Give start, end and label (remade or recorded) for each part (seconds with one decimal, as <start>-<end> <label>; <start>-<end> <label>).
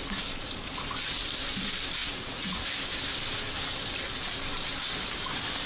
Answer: 0.0-2.0 recorded; 2.0-2.6 remade; 2.6-5.7 recorded